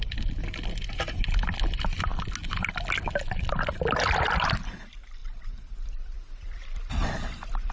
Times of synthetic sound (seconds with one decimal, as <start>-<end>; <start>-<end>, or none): 5.2-6.9